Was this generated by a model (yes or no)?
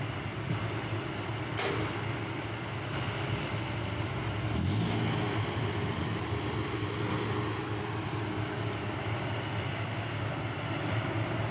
no